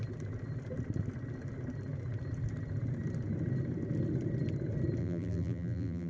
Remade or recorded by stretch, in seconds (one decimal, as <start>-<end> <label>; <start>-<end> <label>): 0.0-5.0 recorded; 5.0-6.1 remade